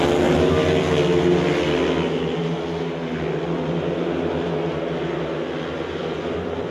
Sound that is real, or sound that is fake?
real